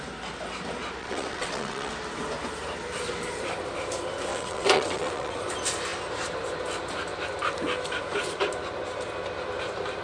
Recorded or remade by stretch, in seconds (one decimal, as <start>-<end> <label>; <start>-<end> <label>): 0.0-1.0 recorded; 1.0-1.9 remade; 1.9-4.3 recorded; 4.3-5.4 remade; 5.4-10.0 recorded